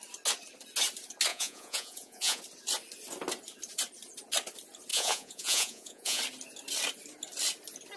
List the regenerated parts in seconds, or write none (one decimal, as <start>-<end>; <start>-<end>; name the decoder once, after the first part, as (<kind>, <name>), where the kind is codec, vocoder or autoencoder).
1.3-2.4 (vocoder, Vocos); 4.9-6.2

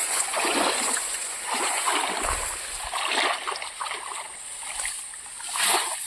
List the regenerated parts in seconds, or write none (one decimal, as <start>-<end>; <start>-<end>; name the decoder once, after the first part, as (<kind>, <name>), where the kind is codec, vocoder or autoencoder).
0.0-1.9 (vocoder, Vocos); 5.6-6.1